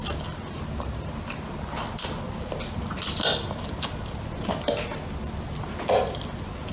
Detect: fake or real real